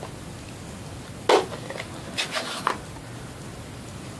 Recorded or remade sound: recorded